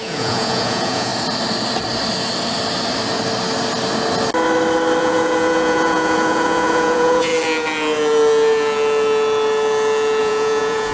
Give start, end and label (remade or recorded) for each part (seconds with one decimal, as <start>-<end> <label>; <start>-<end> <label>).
0.0-1.1 remade; 1.1-5.0 recorded; 5.0-7.3 remade; 7.3-10.2 recorded; 10.2-10.9 remade